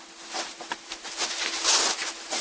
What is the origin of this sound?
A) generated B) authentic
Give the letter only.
B